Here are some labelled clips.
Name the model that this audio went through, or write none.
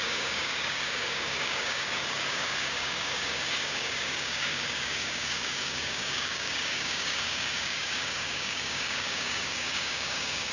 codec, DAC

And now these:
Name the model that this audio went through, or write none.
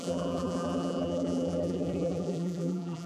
vocoder, BigVGAN v2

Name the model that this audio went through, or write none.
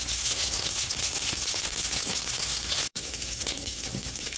codec, SNAC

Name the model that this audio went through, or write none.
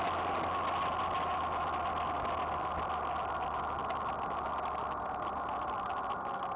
none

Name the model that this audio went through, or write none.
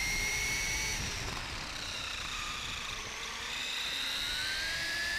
vocoder, BigVGAN v2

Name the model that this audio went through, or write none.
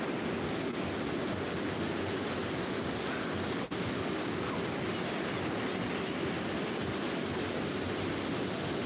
none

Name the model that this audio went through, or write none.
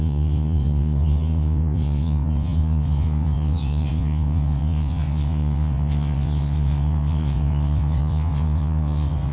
vocoder, WaveNeXt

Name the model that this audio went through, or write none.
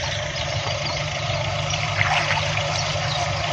none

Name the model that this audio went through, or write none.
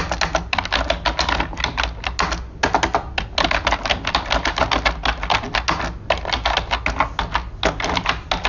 none